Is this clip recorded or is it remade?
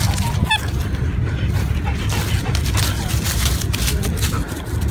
recorded